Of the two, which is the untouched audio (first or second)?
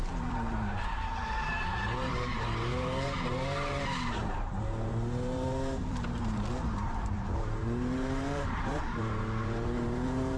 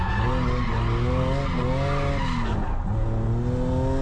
second